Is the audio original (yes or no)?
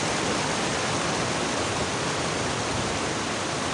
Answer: yes